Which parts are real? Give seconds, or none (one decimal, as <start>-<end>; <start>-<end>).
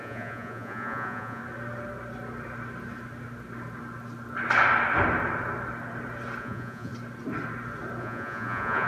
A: 1.4-6.4; 6.9-8.0